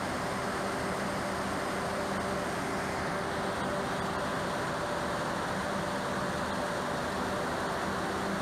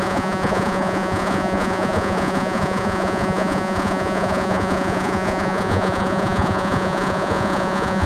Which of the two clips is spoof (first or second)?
second